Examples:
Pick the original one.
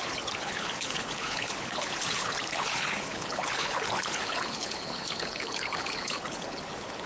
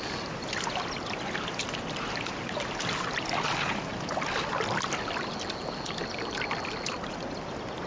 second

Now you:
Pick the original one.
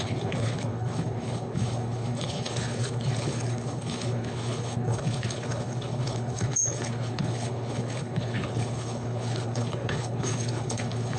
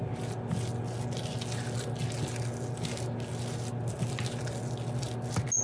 second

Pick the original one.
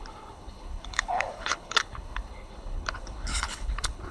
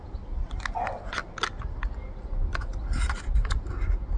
second